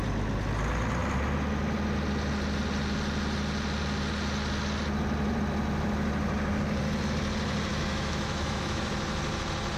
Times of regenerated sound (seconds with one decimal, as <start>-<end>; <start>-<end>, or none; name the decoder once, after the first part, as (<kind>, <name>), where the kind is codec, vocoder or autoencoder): 7.7-8.9 (autoencoder, DAC-VAE)